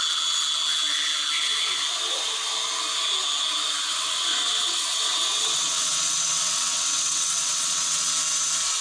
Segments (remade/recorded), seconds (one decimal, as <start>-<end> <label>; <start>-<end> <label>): 0.0-3.9 recorded; 3.9-8.1 remade; 8.1-8.8 recorded